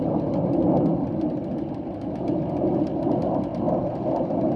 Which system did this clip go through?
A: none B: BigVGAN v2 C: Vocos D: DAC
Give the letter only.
A